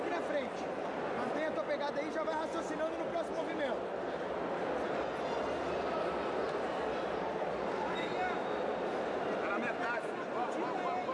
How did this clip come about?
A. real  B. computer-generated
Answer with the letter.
A